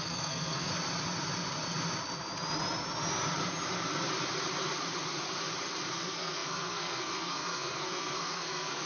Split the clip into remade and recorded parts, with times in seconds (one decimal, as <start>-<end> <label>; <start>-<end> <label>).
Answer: 0.0-0.7 remade; 0.7-5.9 recorded; 5.9-8.9 remade